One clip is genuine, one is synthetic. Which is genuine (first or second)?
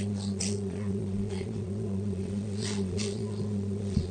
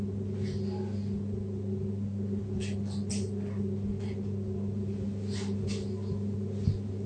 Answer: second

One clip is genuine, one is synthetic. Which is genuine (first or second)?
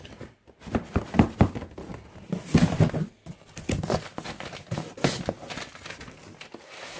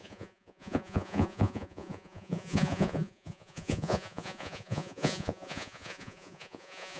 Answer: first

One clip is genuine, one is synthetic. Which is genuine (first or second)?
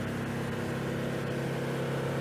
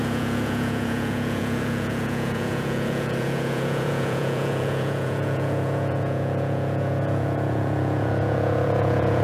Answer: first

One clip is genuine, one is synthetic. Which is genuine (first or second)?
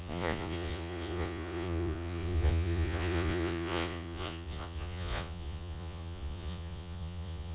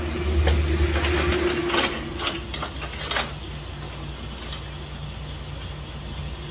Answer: second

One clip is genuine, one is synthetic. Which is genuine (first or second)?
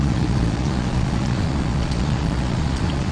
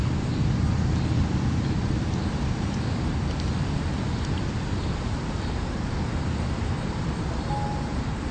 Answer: second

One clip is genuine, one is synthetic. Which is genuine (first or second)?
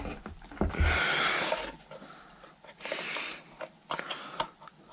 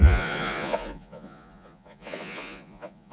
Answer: first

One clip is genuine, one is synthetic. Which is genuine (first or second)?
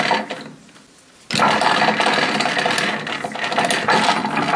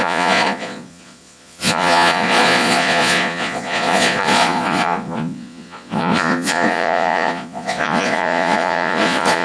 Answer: first